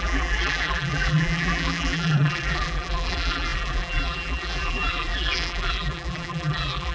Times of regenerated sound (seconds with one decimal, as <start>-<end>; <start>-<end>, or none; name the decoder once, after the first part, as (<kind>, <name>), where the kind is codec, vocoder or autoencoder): 0.0-6.9 (vocoder, BigVGAN v2)